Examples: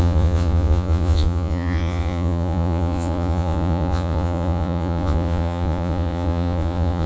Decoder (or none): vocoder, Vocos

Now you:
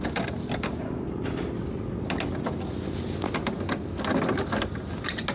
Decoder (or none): none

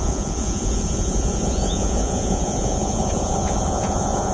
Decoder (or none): vocoder, Vocos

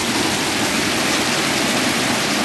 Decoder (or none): none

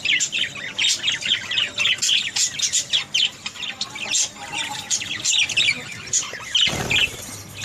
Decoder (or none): none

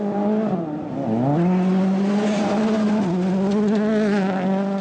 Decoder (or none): none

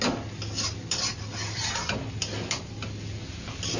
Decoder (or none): none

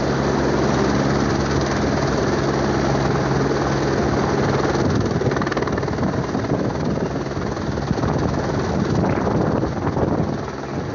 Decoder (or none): none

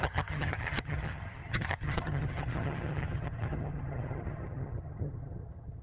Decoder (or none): vocoder, HiFi-GAN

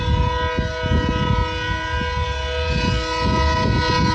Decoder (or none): none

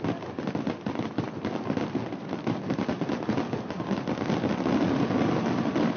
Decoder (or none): none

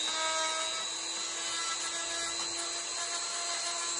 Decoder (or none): none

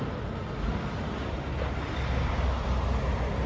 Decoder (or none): none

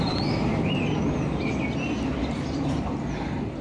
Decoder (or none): none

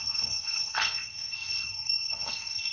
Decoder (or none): codec, SNAC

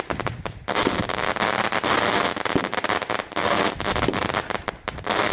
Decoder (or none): none